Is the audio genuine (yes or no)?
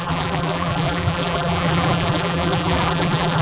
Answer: no